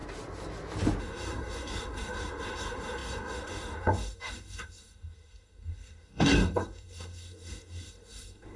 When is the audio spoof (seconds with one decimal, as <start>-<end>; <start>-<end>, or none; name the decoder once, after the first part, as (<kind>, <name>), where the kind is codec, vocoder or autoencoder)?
1.0-8.6 (codec, SNAC)